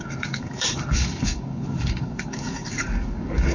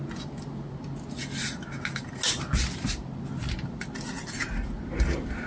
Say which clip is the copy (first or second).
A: first